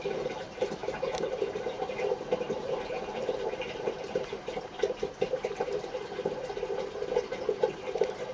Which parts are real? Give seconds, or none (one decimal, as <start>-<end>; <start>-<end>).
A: none